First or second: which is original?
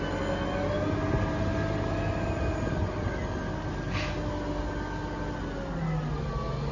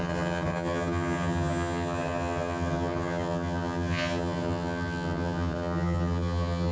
first